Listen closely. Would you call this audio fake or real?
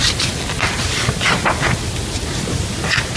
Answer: real